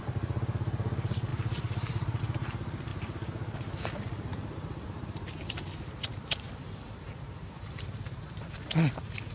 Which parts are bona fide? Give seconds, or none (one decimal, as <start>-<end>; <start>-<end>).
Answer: 0.0-1.3; 2.2-2.9; 6.0-9.3